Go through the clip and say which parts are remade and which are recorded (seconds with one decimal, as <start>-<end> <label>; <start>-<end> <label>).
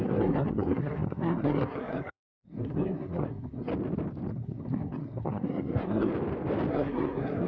0.0-3.7 remade; 3.7-4.3 recorded; 4.3-6.1 remade; 6.1-6.7 recorded; 6.7-7.5 remade